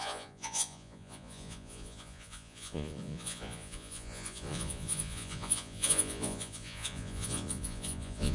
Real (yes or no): no